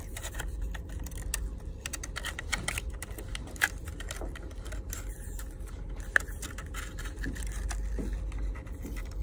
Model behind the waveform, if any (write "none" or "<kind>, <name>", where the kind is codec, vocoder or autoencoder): none